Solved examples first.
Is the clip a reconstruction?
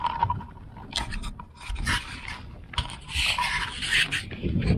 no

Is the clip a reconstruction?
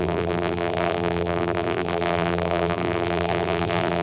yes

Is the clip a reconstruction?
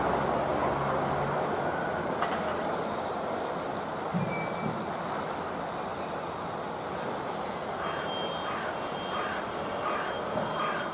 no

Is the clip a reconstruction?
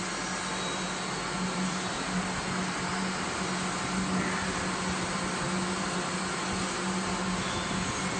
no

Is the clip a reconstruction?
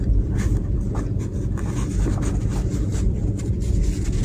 no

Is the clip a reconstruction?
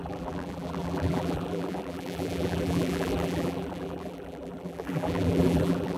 yes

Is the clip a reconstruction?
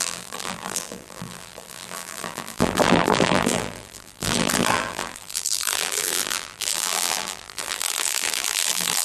yes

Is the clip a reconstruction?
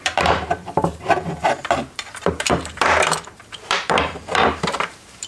yes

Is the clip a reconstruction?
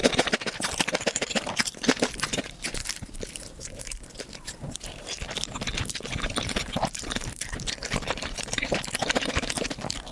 yes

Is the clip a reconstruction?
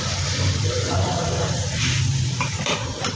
yes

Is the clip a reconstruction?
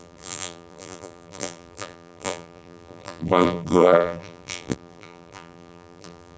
yes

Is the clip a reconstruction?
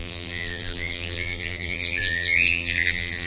yes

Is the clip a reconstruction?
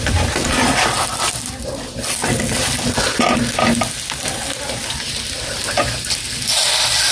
no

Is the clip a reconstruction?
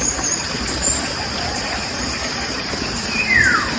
yes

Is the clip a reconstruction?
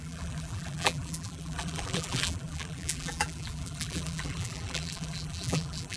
yes